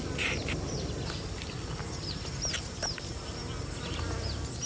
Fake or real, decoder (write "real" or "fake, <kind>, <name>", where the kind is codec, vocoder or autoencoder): real